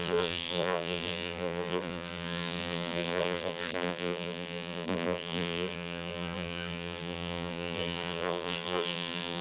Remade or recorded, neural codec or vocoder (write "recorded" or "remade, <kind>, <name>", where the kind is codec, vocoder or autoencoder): remade, vocoder, BigVGAN v2